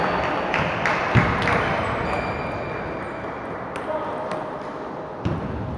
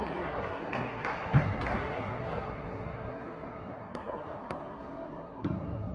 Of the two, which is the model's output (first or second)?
second